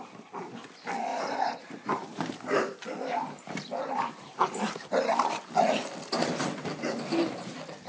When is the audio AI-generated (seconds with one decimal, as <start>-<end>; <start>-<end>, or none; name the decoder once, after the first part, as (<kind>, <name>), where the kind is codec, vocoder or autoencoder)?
1.1-5.5 (vocoder, BigVGAN v2)